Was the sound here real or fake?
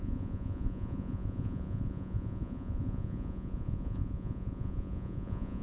fake